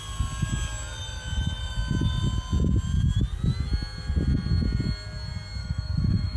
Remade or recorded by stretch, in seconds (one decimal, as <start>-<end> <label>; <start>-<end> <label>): 0.0-5.6 recorded; 5.6-6.4 remade